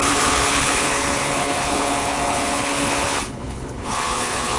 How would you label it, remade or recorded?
remade